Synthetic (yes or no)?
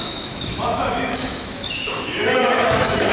yes